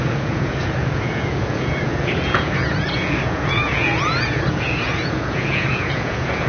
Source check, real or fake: fake